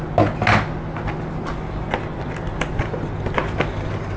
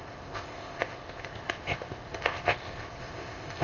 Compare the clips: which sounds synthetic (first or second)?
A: second